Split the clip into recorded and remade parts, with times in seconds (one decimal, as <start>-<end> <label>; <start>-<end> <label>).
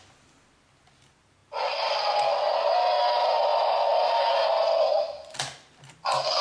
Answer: 0.0-6.4 recorded